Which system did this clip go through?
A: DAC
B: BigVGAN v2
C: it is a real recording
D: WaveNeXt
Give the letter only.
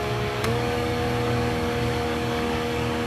A